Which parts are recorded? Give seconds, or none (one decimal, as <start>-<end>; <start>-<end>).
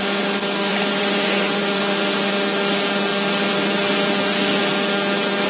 0.0-0.7; 1.9-5.5